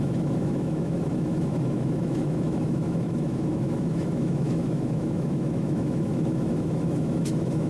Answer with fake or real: fake